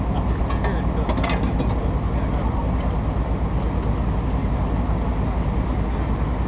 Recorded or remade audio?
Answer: recorded